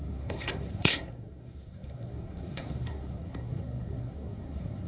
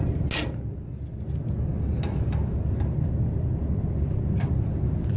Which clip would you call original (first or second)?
second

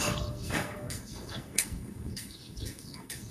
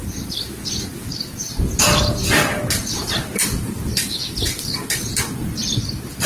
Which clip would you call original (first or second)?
second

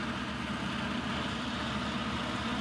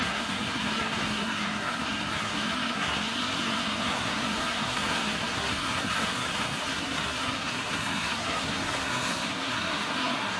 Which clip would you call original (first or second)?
first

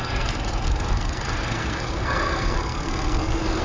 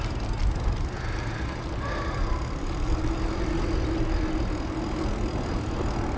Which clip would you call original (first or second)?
second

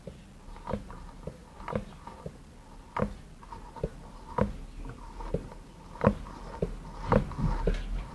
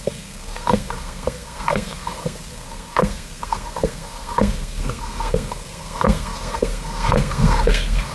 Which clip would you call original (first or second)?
first